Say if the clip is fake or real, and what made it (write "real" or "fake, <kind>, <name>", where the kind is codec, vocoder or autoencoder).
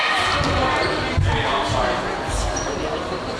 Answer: real